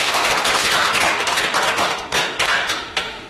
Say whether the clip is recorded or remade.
remade